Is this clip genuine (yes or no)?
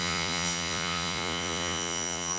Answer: no